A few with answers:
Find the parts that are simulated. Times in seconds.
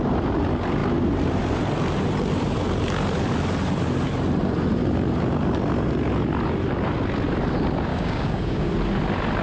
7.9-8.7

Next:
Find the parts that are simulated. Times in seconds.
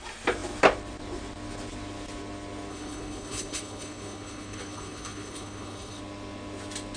2.7-6.0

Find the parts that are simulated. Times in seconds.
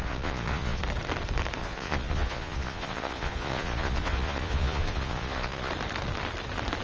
0.0-0.8; 1.6-5.7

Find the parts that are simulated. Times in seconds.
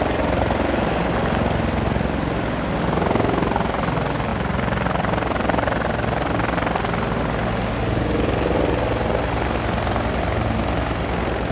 none